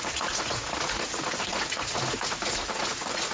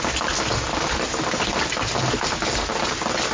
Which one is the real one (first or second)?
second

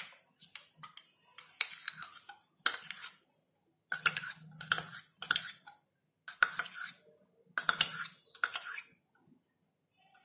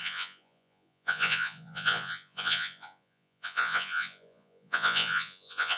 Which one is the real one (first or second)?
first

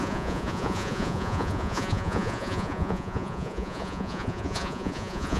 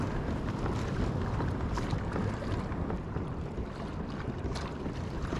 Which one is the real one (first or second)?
second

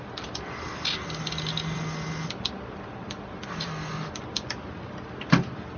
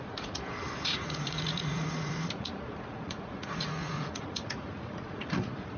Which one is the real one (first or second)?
first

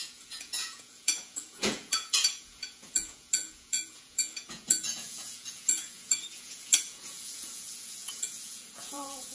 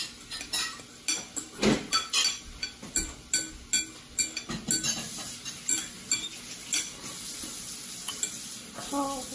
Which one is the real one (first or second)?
second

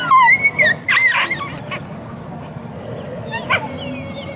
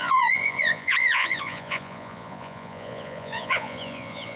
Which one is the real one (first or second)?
first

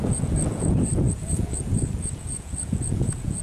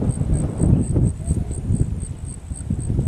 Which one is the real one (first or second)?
second